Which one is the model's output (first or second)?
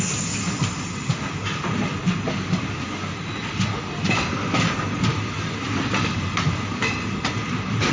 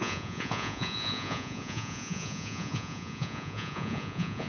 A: second